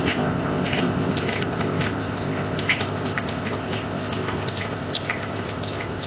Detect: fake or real fake